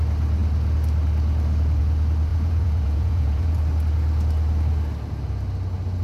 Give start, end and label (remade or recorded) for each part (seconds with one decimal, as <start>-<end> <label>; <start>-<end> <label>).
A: 0.0-2.3 recorded; 2.3-3.6 remade; 3.6-6.0 recorded